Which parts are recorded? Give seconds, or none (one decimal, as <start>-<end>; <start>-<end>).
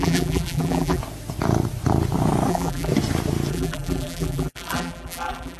1.0-2.5; 2.9-3.5